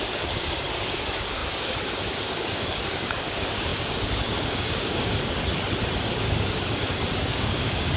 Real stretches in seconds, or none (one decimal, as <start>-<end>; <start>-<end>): 5.4-6.1